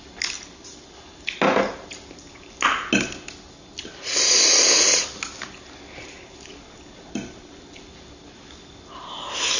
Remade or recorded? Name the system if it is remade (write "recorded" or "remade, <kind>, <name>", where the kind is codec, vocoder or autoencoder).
recorded